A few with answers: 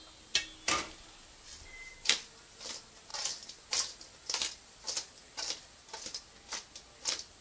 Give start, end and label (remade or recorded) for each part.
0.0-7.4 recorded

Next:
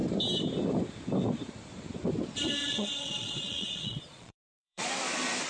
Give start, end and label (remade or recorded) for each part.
0.0-2.6 recorded; 2.6-4.9 remade; 4.9-5.5 recorded

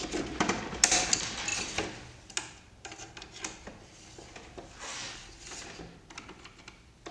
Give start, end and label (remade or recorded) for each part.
0.0-7.1 recorded

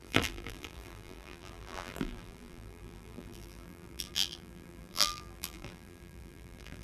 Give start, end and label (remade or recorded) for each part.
0.0-6.8 remade

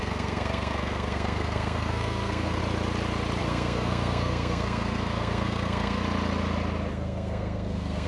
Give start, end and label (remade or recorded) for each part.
0.0-2.6 remade; 2.6-3.4 recorded; 3.4-6.0 remade; 6.0-6.9 recorded; 6.9-8.1 remade

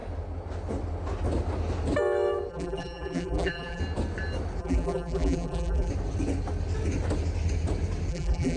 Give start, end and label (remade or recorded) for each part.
0.0-2.5 recorded; 2.5-3.8 remade; 3.8-4.6 recorded; 4.6-5.9 remade; 5.9-8.1 recorded; 8.1-8.6 remade